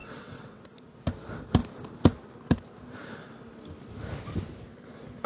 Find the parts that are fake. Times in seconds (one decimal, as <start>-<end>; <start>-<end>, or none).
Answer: 0.0-0.6